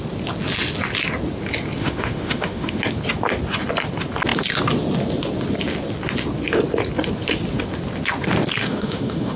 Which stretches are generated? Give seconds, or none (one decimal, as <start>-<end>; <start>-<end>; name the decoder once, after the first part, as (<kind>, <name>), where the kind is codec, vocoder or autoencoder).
1.8-2.8 (autoencoder, DAC-VAE); 8.6-9.4